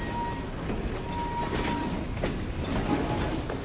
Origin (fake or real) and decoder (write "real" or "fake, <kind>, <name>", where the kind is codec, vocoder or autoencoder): real